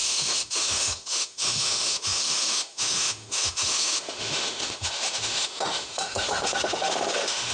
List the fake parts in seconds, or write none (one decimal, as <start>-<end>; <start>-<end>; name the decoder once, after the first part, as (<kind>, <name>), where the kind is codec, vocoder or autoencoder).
0.0-7.5 (autoencoder, DAC-VAE)